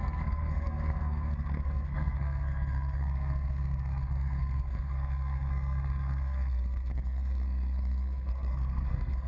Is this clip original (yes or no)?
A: no